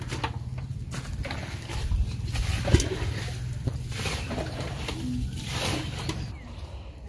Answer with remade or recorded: recorded